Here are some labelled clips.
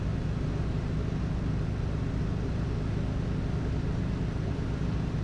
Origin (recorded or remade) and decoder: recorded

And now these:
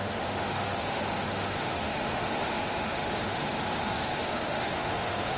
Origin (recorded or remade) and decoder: remade, autoencoder, DAC-VAE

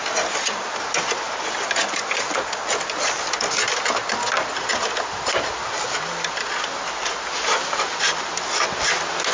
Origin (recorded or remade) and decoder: recorded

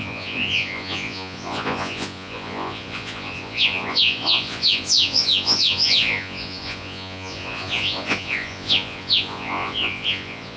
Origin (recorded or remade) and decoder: remade, vocoder, Vocos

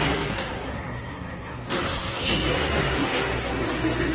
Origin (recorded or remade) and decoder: remade, codec, SNAC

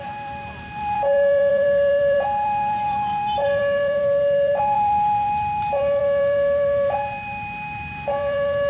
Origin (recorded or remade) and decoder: remade, vocoder, BigVGAN v2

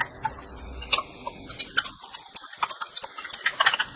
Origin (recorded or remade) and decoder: recorded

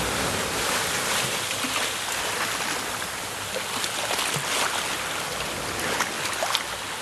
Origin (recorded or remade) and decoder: recorded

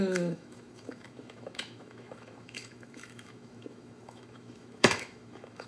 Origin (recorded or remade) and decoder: remade, autoencoder, DAC-VAE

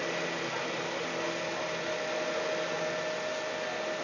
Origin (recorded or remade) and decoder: recorded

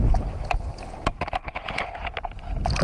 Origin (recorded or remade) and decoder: recorded